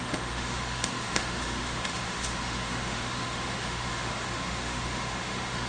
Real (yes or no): no